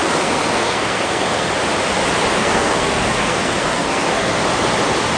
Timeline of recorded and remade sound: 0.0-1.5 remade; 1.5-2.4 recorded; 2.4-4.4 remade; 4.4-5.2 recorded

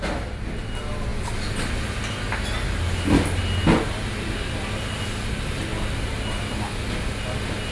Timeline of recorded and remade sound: 0.0-7.7 recorded

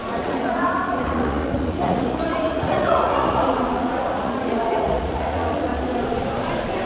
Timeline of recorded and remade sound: 0.0-5.7 remade; 5.7-6.9 recorded

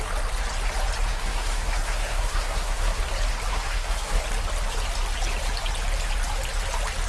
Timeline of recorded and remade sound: 0.0-1.1 recorded; 1.1-3.0 remade; 3.0-3.5 recorded; 3.5-4.2 remade; 4.2-7.1 recorded